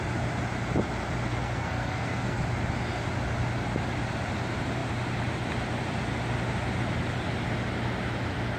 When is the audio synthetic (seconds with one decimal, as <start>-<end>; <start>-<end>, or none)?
1.3-2.4

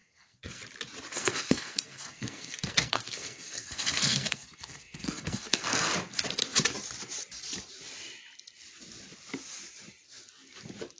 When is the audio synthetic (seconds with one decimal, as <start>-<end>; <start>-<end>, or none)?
0.0-0.6; 1.1-5.9

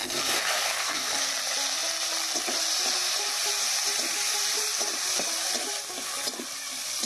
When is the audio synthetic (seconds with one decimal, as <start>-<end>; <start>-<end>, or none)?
0.0-1.3

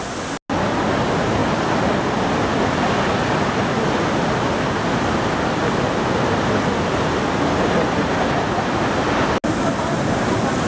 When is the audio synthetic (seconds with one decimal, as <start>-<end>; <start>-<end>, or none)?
none